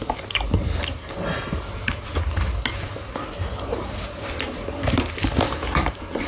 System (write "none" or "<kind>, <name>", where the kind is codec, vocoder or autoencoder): none